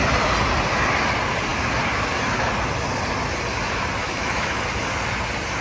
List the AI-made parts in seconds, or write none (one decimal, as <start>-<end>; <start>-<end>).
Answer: 4.0-4.6